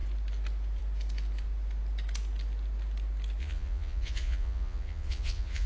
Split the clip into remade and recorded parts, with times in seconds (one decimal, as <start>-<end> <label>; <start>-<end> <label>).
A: 0.0-3.4 recorded; 3.4-5.7 remade